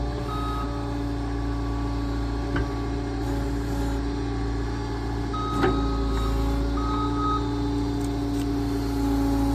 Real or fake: real